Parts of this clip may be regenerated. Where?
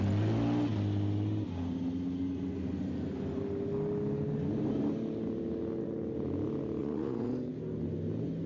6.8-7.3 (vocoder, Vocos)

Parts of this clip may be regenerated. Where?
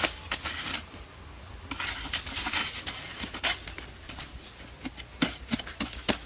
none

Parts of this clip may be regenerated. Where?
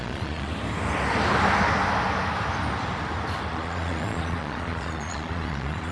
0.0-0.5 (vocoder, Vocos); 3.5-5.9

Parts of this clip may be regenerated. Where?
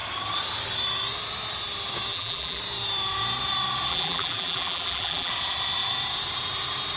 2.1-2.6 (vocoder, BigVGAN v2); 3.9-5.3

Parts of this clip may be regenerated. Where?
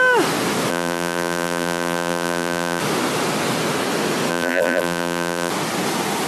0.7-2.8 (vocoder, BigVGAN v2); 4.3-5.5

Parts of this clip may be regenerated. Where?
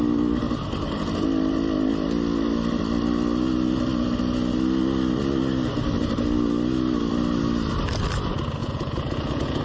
8.6-9.6 (vocoder, Vocos)